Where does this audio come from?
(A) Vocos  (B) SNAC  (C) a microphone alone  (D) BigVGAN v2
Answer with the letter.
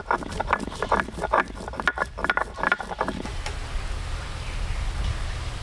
C